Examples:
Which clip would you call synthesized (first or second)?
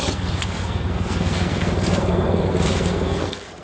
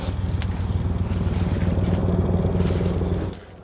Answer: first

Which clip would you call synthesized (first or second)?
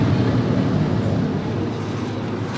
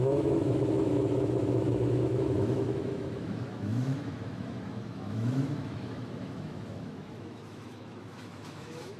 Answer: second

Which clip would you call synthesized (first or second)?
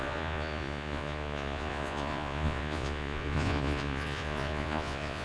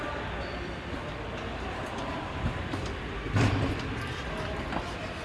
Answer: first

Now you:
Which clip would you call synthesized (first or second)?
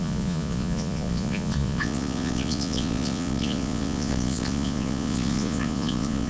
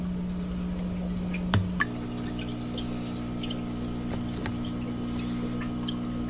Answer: first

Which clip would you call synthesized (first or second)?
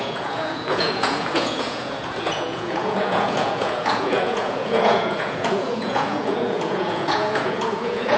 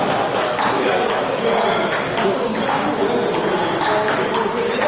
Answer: first